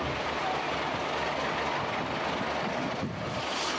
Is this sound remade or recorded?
recorded